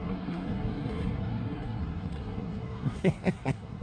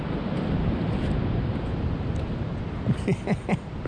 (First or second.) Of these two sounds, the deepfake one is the first